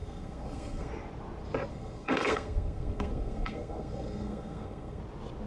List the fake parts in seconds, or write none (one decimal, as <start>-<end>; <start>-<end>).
0.0-0.9; 1.7-5.0